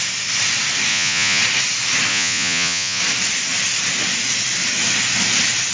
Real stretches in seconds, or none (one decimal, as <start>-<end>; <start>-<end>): 0.0-0.9; 1.4-2.1; 3.0-5.7